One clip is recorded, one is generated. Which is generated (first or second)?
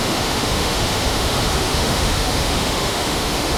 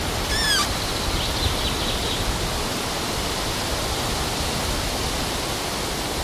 first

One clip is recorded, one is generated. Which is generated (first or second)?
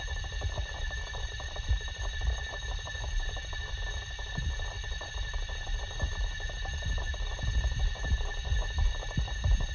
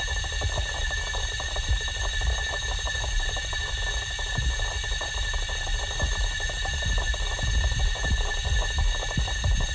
first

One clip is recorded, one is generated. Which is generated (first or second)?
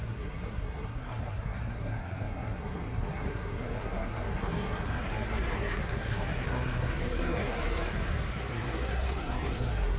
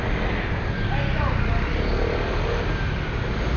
first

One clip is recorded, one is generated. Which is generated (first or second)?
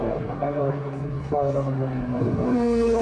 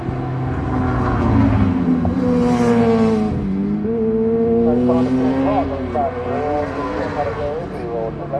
first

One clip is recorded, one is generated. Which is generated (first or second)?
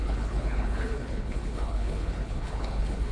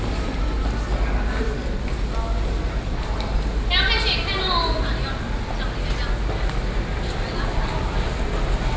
first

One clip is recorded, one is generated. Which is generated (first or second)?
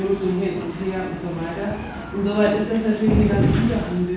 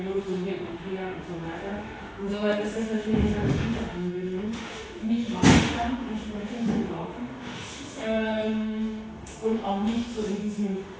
second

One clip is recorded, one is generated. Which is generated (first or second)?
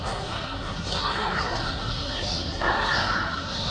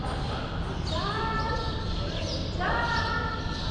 first